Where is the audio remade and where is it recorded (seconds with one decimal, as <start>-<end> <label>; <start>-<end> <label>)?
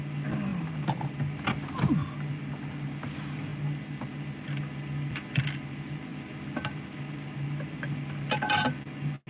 0.0-9.3 recorded